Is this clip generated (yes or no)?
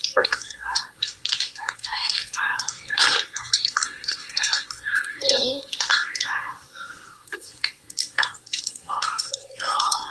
yes